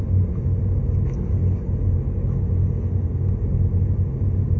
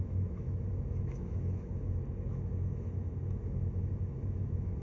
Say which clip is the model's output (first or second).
second